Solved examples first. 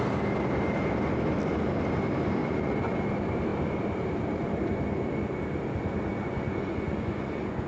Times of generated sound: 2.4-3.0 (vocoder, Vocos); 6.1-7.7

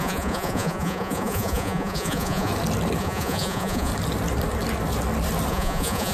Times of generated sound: 0.0-2.5 (vocoder, Vocos); 3.0-3.9; 5.5-6.1

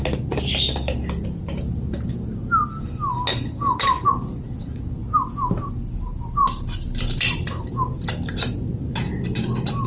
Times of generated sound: none